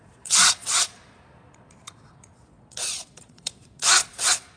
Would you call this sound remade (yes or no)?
yes